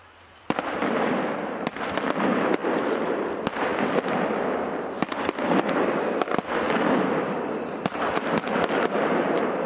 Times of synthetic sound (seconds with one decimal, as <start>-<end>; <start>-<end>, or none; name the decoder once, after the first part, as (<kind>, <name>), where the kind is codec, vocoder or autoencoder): 0.0-3.7 (vocoder, BigVGAN v2); 8.1-9.7